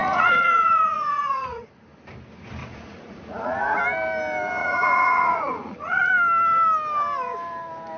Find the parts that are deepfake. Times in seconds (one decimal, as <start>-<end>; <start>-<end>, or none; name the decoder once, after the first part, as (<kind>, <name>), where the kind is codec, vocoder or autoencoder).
0.0-1.7 (vocoder, Vocos); 2.6-3.8; 4.6-6.1